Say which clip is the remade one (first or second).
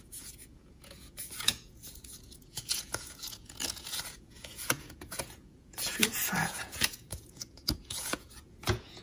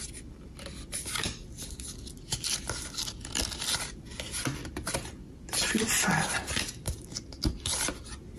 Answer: first